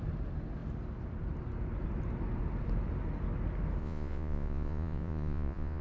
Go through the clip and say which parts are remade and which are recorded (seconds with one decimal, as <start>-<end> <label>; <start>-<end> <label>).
0.0-3.8 recorded; 3.8-5.8 remade